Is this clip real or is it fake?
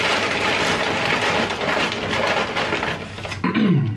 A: real